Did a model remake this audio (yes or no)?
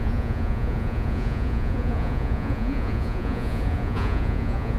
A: yes